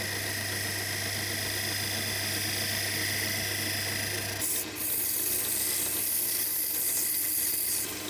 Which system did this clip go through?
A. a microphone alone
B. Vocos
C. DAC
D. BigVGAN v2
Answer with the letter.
A